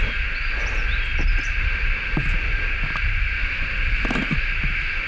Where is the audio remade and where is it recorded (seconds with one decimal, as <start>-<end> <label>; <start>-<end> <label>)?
0.0-5.1 recorded